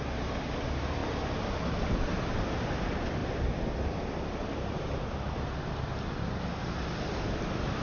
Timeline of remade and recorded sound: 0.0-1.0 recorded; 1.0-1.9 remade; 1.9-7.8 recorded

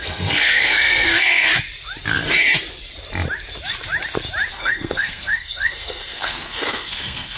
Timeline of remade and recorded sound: 0.0-1.5 remade; 1.5-4.5 recorded; 4.5-7.4 remade